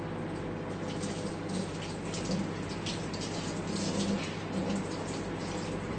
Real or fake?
real